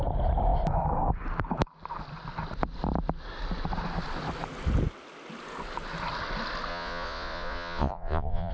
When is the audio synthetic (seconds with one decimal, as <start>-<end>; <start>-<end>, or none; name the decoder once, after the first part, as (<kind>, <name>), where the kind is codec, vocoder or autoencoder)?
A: 6.7-8.5 (vocoder, Vocos)